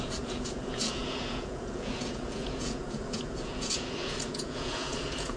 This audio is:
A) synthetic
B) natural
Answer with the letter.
A